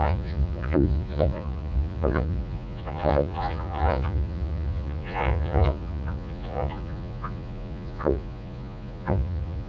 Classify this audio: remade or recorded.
remade